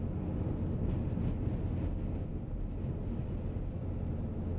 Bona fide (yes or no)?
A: yes